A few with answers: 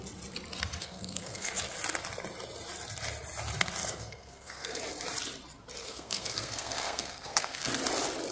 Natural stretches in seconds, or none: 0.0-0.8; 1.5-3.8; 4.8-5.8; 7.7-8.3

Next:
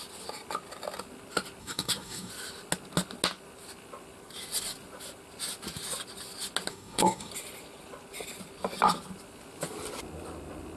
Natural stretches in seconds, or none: 0.0-1.6; 2.3-6.7; 7.3-10.8

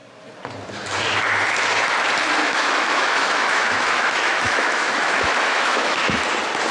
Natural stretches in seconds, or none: 0.0-2.4; 6.2-6.7

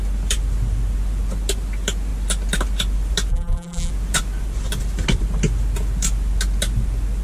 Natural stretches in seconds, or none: 0.0-3.3; 3.9-7.2

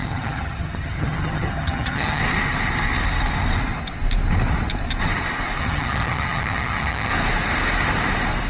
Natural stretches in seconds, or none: 2.2-5.6; 7.1-8.5